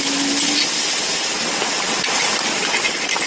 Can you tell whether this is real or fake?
real